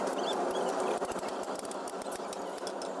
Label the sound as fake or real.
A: real